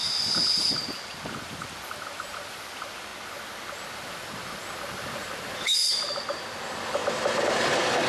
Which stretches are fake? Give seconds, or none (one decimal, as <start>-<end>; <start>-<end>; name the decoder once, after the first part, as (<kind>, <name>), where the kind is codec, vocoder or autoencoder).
0.6-3.1 (vocoder, BigVGAN v2); 4.0-7.0